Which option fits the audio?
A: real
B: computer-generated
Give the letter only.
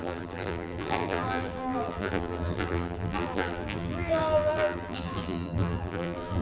B